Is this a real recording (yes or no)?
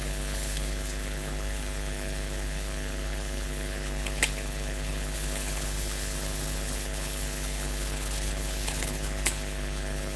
no